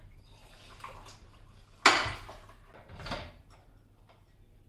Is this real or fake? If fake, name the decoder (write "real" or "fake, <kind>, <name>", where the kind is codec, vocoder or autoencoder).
real